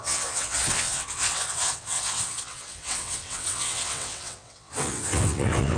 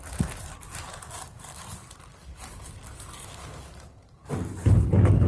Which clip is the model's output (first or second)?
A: first